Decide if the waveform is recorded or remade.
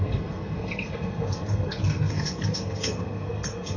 remade